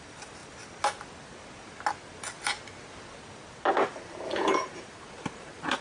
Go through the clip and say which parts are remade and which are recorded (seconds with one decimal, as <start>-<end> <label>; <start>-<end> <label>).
0.0-0.4 remade; 0.4-3.7 recorded; 3.7-5.8 remade